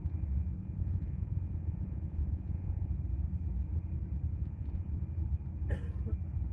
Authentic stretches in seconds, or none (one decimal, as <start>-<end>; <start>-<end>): 0.0-0.6; 2.9-4.3; 4.9-6.5